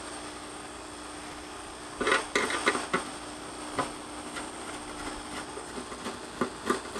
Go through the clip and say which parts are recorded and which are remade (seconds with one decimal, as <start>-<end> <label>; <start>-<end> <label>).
0.0-7.0 recorded